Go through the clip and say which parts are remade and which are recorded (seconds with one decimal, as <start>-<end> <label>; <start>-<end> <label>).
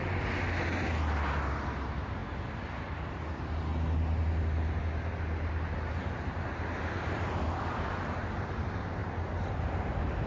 0.0-10.3 recorded